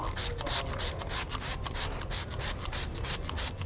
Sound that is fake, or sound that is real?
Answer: real